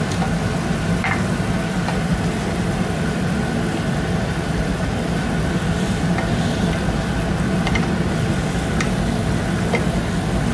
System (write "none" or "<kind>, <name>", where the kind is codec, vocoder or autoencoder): none